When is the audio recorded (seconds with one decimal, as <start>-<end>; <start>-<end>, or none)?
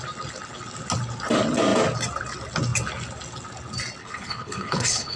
0.0-4.0